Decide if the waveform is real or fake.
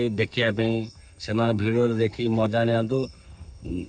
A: fake